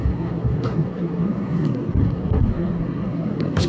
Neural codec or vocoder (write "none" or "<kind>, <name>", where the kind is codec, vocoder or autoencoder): codec, SNAC